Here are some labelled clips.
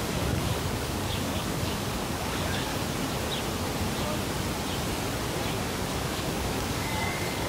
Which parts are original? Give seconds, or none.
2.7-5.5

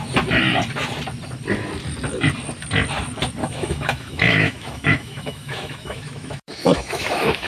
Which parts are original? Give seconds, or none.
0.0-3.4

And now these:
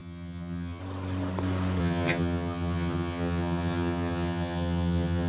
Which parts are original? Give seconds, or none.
0.8-1.8